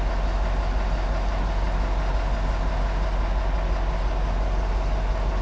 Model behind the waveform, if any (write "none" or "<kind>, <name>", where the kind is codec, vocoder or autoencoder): none